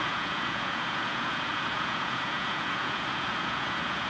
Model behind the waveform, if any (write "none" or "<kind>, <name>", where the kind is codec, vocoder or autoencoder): vocoder, Vocos